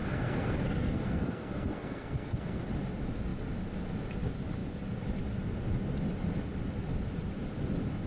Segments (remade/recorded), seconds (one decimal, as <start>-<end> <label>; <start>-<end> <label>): 0.0-2.6 remade; 2.6-8.1 recorded

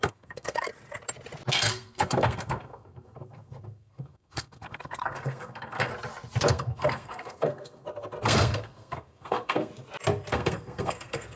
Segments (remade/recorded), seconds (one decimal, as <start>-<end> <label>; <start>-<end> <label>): 0.0-0.7 remade; 0.7-1.5 recorded; 1.5-5.9 remade; 5.9-6.5 recorded; 6.5-9.7 remade; 9.7-10.3 recorded; 10.3-11.4 remade

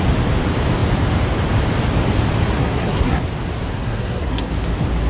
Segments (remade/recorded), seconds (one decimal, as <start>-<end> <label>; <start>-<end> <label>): 0.0-2.6 recorded; 2.6-3.2 remade; 3.2-3.7 recorded; 3.7-4.5 remade; 4.5-5.1 recorded

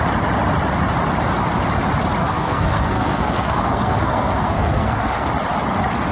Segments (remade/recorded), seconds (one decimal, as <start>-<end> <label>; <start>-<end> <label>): 0.0-2.2 recorded; 2.2-5.3 remade; 5.3-6.1 recorded

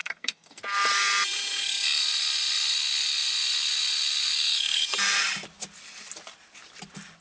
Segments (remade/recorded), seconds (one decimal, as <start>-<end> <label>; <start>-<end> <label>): 0.0-0.6 remade; 0.6-7.2 recorded